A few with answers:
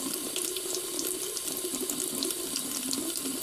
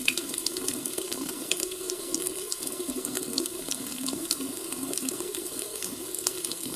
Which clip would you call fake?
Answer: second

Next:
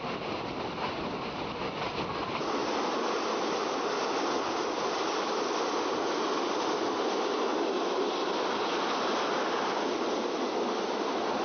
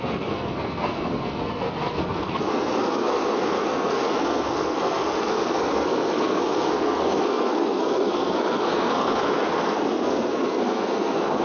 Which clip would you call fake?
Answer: second